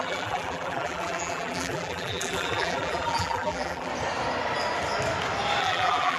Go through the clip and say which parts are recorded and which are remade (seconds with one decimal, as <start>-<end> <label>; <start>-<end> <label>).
0.0-3.9 remade; 3.9-5.6 recorded; 5.6-6.2 remade